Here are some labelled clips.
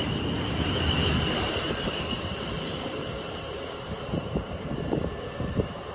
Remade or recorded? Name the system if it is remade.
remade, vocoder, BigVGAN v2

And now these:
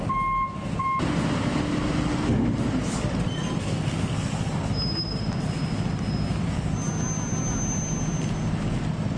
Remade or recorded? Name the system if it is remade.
recorded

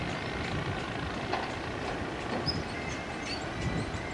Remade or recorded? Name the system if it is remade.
remade, vocoder, BigVGAN v2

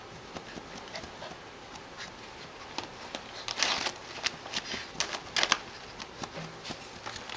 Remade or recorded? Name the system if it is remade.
recorded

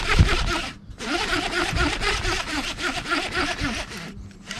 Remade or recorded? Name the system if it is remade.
recorded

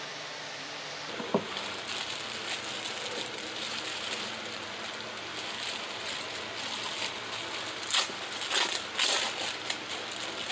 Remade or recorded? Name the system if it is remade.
recorded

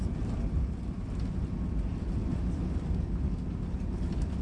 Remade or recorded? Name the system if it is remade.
recorded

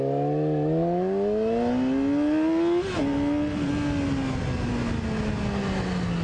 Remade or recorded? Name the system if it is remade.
recorded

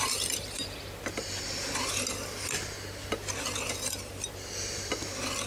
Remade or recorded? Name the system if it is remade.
recorded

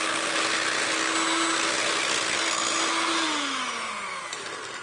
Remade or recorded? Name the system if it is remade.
recorded